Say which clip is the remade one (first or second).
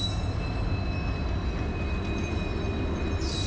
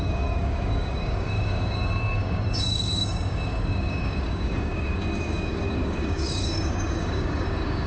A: second